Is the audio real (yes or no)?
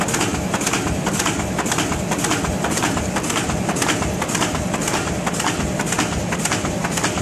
yes